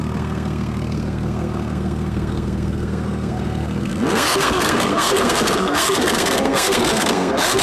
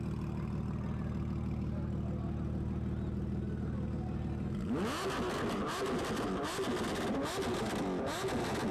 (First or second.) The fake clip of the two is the first